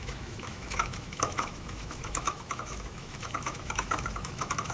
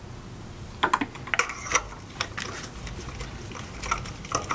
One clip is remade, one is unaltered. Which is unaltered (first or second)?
second